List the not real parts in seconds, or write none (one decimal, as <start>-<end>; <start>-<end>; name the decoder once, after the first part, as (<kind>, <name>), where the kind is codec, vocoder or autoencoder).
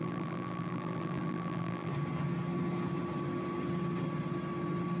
0.0-1.9 (vocoder, BigVGAN v2)